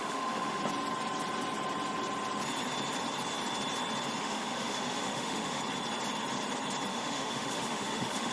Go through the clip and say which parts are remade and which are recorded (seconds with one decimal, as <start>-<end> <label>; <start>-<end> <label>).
0.0-0.6 remade; 0.6-4.2 recorded; 4.2-5.6 remade; 5.6-6.9 recorded; 6.9-8.3 remade